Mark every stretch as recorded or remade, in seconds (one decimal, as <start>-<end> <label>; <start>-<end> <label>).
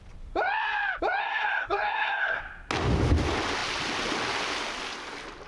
0.0-1.2 recorded; 1.2-2.4 remade; 2.4-5.5 recorded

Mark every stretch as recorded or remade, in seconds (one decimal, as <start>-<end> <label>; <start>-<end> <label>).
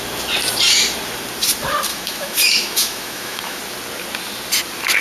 0.0-1.9 recorded; 1.9-3.6 remade; 3.6-5.0 recorded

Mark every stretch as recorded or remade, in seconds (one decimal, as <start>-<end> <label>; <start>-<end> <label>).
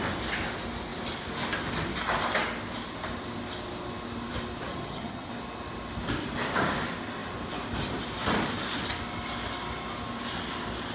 0.0-4.7 recorded; 4.7-5.3 remade; 5.3-10.9 recorded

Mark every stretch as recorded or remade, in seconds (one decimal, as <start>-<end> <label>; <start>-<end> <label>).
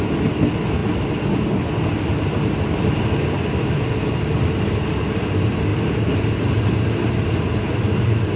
0.0-8.4 recorded